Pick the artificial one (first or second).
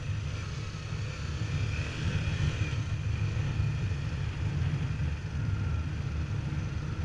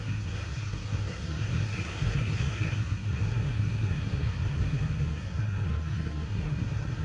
second